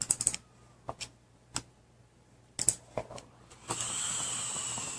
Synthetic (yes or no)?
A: no